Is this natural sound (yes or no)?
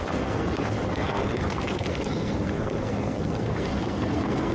no